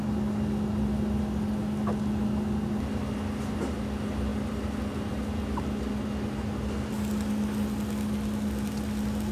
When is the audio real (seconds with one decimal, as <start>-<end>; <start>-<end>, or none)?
0.0-9.3